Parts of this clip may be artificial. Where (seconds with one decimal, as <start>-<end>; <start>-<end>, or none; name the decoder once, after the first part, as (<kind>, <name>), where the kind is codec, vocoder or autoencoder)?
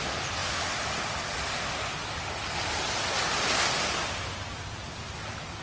none